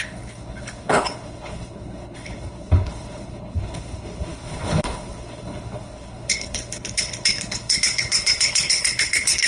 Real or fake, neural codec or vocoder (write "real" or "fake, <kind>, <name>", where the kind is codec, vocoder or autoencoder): fake, codec, HILCodec